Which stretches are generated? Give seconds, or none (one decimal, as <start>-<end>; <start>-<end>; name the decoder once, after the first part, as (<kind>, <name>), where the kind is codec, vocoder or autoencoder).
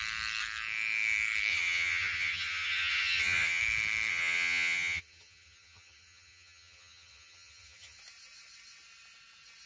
1.5-3.6 (vocoder, HiFi-GAN); 4.1-8.0